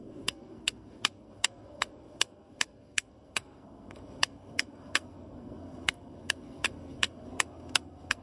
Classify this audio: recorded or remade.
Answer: remade